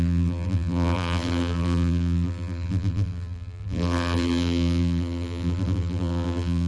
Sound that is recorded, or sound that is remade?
remade